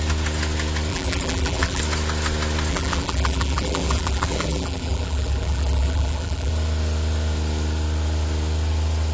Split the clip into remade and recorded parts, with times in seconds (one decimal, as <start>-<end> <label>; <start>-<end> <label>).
0.0-0.9 recorded; 0.9-1.8 remade; 1.8-2.7 recorded; 2.7-6.5 remade; 6.5-9.1 recorded

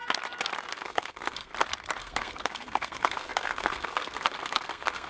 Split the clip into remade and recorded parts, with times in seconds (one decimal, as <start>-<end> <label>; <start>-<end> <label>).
0.0-0.7 recorded; 0.7-1.5 remade; 1.5-2.0 recorded; 2.0-5.1 remade

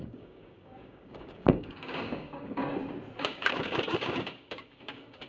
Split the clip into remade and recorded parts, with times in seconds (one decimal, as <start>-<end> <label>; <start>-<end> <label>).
0.0-2.6 remade; 2.6-3.2 recorded; 3.2-5.3 remade

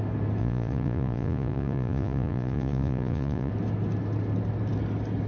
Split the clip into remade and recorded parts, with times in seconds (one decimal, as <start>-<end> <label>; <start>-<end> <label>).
0.0-0.4 recorded; 0.4-3.5 remade; 3.5-5.3 recorded

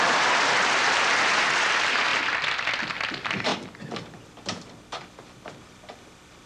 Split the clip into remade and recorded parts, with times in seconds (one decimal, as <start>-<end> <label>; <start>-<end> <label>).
0.0-2.1 remade; 2.1-3.1 recorded; 3.1-3.5 remade; 3.5-5.6 recorded; 5.6-6.5 remade

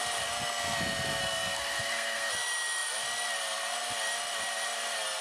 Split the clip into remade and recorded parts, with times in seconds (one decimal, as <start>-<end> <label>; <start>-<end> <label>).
0.0-1.2 recorded; 1.2-2.3 remade; 2.3-5.2 recorded

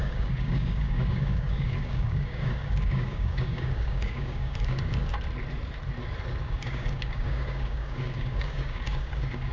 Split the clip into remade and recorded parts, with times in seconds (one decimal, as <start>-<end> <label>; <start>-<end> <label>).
0.0-5.1 remade; 5.1-6.4 recorded; 6.4-9.5 remade

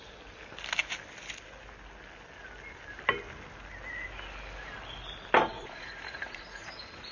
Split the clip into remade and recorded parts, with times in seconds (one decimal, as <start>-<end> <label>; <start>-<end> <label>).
0.0-5.5 recorded; 5.5-7.1 remade